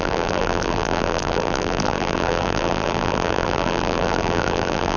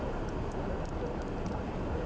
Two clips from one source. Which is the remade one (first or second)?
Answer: first